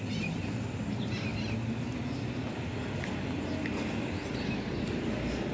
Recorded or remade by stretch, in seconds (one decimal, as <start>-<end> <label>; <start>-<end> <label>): 0.0-5.5 recorded